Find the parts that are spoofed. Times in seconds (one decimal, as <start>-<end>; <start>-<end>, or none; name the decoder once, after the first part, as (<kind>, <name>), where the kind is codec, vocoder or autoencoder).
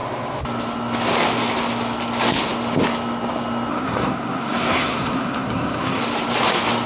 3.7-6.0 (codec, SNAC)